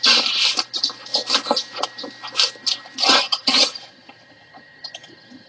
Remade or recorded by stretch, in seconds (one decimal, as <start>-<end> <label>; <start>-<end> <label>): 0.0-3.0 recorded; 3.0-5.5 remade